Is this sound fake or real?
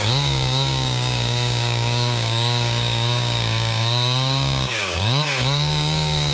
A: fake